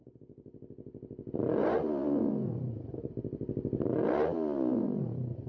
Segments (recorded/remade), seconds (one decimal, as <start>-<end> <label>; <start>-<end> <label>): 0.0-1.6 recorded; 1.6-2.7 remade; 2.7-4.7 recorded; 4.7-5.5 remade